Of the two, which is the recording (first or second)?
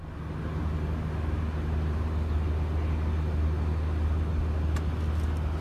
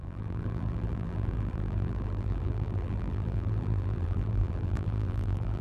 first